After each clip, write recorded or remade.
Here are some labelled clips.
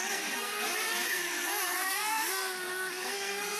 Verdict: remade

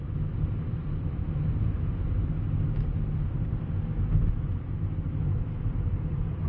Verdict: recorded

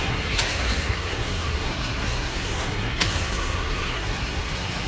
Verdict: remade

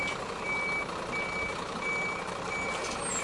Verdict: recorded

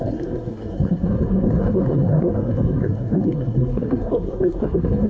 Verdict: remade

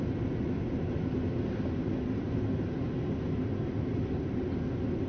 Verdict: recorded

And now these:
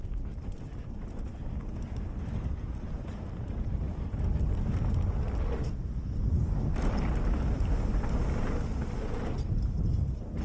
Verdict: recorded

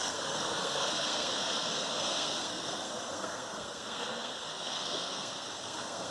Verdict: remade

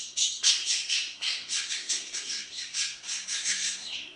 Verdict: remade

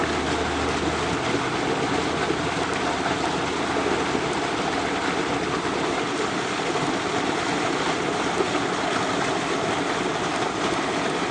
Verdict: recorded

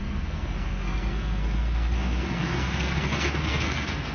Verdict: remade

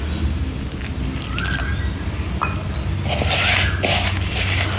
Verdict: recorded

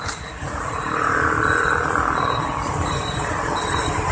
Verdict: recorded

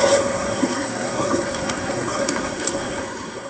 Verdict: remade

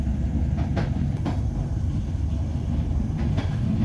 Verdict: recorded